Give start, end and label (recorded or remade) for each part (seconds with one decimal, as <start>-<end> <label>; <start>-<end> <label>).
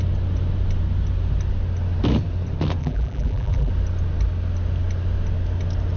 0.0-2.8 recorded; 2.8-3.7 remade; 3.7-6.0 recorded